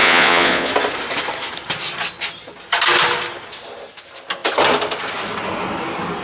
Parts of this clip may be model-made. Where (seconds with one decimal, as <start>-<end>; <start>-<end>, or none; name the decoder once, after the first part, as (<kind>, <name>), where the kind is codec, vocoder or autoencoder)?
0.0-0.7 (vocoder, Vocos)